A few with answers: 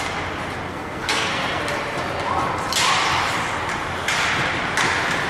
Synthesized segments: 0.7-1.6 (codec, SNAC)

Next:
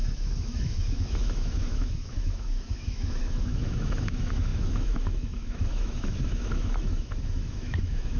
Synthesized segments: 0.0-8.2 (autoencoder, DAC-VAE)

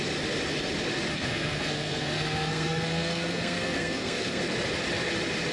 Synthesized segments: 1.1-4.4 (codec, SNAC)

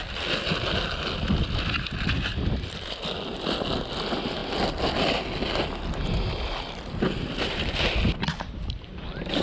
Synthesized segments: none

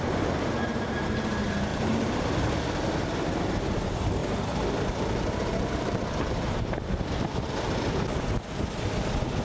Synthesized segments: 1.7-2.5 (vocoder, BigVGAN v2); 4.2-7.0

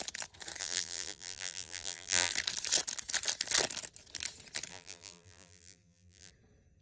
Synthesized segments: 0.6-2.3 (vocoder, BigVGAN v2); 4.7-6.3